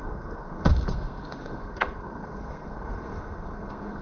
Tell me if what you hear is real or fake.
fake